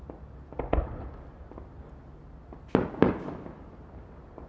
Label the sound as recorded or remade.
recorded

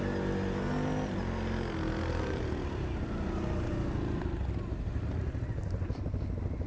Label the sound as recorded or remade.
recorded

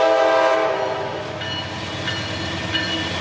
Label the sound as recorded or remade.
recorded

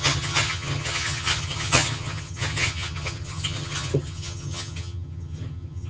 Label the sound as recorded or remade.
remade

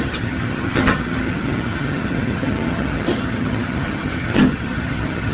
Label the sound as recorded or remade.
remade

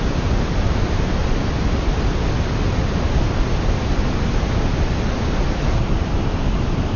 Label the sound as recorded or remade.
recorded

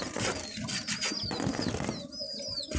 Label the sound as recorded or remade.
recorded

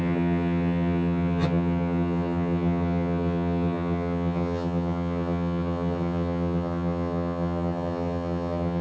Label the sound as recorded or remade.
remade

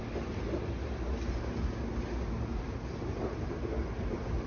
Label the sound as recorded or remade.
recorded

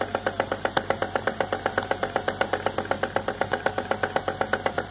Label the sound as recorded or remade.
recorded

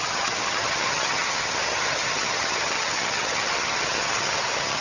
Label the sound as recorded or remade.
remade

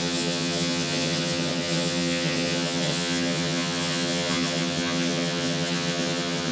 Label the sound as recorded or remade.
remade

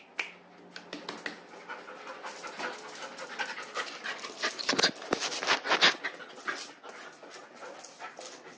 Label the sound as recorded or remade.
recorded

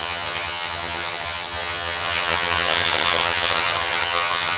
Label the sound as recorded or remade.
remade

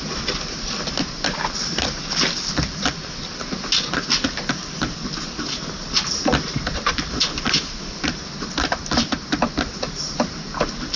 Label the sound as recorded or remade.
recorded